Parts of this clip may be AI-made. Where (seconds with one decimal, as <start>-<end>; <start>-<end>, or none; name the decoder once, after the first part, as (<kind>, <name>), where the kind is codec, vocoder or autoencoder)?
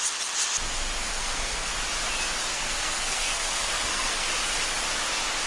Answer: 1.1-1.7 (codec, SNAC); 2.5-4.3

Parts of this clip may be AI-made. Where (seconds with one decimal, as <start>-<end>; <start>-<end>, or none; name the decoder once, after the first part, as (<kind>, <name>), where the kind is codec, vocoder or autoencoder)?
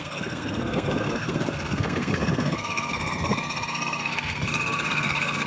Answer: 0.0-5.5 (codec, SNAC)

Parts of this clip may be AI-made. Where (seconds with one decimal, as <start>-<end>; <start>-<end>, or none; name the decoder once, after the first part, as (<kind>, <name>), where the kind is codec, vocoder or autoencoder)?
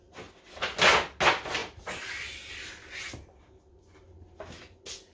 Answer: none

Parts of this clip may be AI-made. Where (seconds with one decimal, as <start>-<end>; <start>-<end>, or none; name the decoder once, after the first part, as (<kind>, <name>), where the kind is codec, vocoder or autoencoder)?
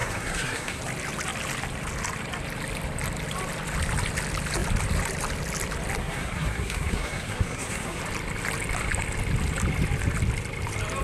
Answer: 0.0-0.8 (codec, SNAC); 6.0-8.0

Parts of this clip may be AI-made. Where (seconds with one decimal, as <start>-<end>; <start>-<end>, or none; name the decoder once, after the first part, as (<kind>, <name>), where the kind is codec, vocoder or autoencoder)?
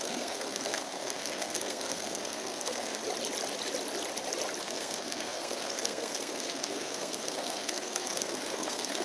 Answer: 0.0-3.0 (codec, SNAC); 4.6-9.0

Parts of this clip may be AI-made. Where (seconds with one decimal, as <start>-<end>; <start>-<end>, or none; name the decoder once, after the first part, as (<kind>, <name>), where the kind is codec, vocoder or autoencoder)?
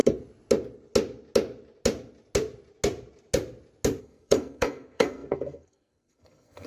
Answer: 4.0-6.7 (codec, SNAC)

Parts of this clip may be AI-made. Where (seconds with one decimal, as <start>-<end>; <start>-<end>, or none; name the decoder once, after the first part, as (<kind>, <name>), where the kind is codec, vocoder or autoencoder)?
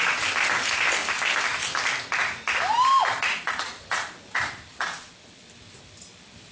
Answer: none